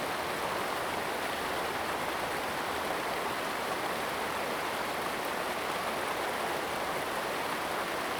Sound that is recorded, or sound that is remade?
recorded